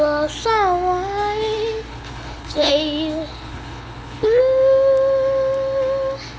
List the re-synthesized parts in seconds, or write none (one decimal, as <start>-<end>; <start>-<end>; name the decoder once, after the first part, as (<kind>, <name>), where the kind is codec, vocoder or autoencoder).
1.9-2.7 (codec, HILCodec); 3.3-4.4